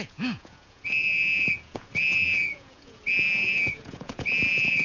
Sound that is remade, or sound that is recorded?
remade